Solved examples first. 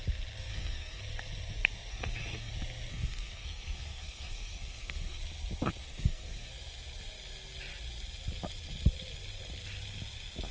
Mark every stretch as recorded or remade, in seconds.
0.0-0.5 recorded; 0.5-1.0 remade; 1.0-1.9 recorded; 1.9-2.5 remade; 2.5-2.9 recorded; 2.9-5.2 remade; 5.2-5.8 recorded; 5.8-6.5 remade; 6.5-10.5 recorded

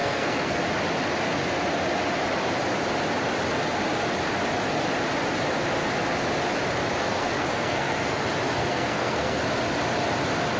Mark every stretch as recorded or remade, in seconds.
0.0-0.6 remade; 0.6-7.0 recorded; 7.0-8.2 remade; 8.2-8.6 recorded; 8.6-9.4 remade; 9.4-10.6 recorded

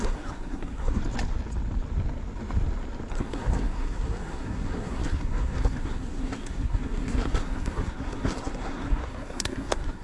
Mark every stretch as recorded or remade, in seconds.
0.0-1.0 remade; 1.0-3.1 recorded; 3.1-10.0 remade

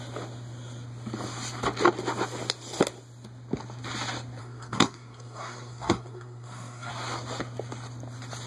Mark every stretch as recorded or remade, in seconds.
0.0-4.4 recorded; 4.4-6.9 remade; 6.9-8.5 recorded

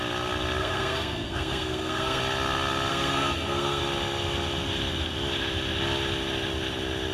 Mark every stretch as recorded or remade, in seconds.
0.0-0.6 recorded; 0.6-2.2 remade; 2.2-2.9 recorded; 2.9-3.8 remade; 3.8-7.1 recorded